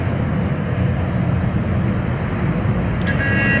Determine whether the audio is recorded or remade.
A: recorded